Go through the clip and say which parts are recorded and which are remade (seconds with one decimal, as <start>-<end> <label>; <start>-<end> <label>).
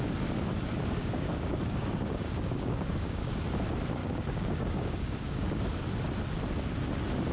0.0-1.0 recorded; 1.0-3.4 remade; 3.4-4.0 recorded; 4.0-5.8 remade; 5.8-7.3 recorded